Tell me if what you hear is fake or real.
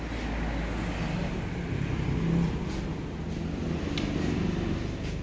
real